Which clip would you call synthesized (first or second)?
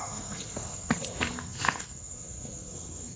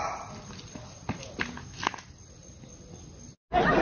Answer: first